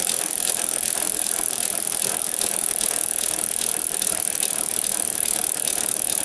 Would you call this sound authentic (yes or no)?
no